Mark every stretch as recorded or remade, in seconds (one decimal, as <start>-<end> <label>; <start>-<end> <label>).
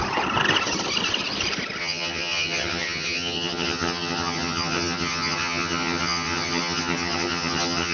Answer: 0.0-1.8 recorded; 1.8-7.9 remade